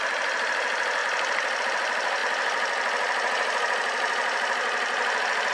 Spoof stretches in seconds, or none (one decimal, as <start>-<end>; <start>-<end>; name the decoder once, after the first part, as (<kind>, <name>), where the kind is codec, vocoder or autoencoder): 0.0-1.0 (vocoder, BigVGAN v2); 1.6-2.2